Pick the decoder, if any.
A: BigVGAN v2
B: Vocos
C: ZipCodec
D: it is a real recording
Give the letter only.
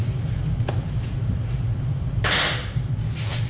D